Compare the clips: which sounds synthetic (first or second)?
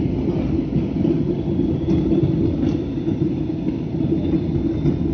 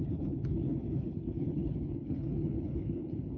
second